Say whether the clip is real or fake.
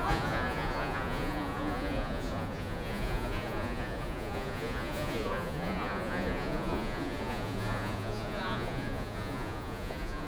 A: fake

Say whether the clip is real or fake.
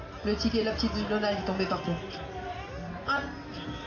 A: real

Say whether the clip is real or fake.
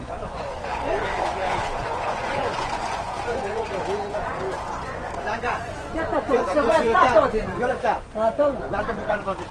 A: fake